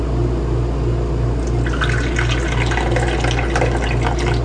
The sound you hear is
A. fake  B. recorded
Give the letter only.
B